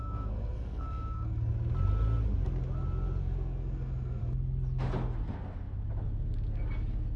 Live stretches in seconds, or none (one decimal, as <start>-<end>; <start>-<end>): 1.5-3.2; 4.2-7.2